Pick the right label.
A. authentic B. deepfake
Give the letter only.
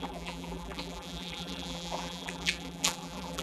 B